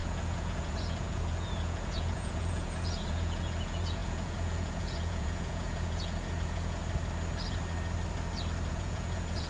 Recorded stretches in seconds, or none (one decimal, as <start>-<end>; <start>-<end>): 6.8-8.7